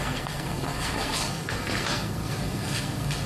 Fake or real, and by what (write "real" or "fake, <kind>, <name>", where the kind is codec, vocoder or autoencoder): fake, codec, SNAC